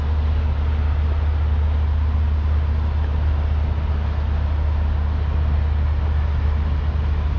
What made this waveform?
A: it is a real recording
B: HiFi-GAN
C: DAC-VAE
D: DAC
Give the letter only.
A